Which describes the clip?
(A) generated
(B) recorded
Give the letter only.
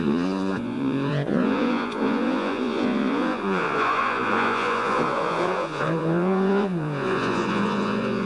A